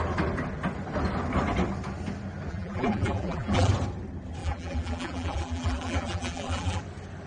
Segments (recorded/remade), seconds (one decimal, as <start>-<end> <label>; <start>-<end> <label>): 0.0-2.5 recorded; 2.5-3.7 remade; 3.7-4.4 recorded; 4.4-6.8 remade; 6.8-7.3 recorded

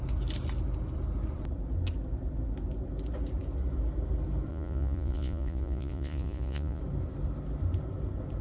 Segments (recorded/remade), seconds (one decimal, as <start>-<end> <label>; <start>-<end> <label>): 0.0-4.5 recorded; 4.5-6.8 remade; 6.8-8.4 recorded

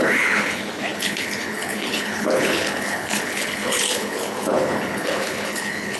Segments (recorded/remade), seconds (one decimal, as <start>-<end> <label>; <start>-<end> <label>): 0.0-6.0 remade

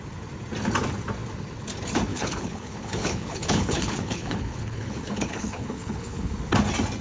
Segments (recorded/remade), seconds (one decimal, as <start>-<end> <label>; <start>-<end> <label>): 0.0-2.1 recorded; 2.1-6.3 remade; 6.3-7.0 recorded

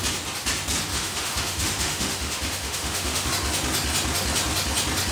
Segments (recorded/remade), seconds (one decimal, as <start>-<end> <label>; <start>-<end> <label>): 0.0-0.9 recorded; 0.9-3.3 remade; 3.3-5.1 recorded

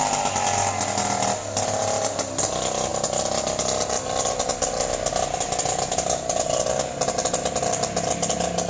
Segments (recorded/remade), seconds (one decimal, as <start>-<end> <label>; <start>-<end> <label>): 0.0-8.7 recorded